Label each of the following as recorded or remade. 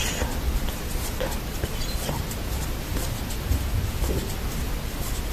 recorded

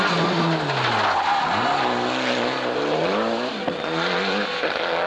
recorded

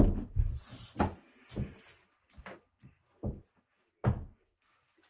recorded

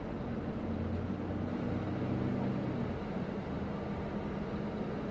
recorded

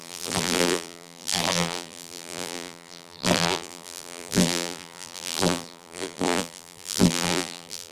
remade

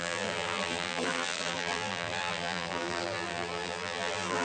remade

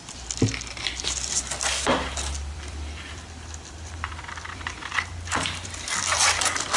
remade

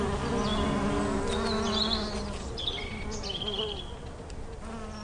recorded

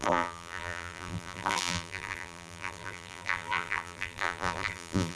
remade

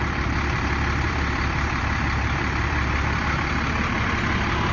remade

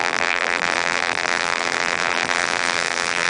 remade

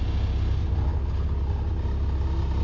recorded